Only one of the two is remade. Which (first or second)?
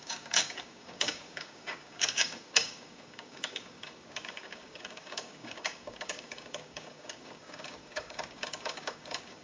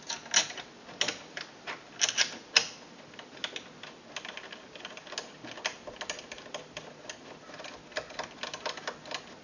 first